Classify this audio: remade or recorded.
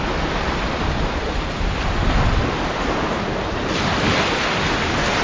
recorded